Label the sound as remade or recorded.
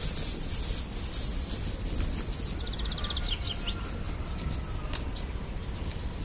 recorded